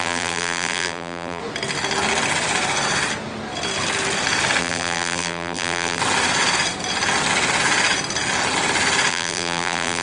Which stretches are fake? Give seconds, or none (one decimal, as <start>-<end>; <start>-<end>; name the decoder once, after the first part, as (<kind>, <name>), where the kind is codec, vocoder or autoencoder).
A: 0.0-1.4 (vocoder, BigVGAN v2); 4.6-6.0; 9.1-10.0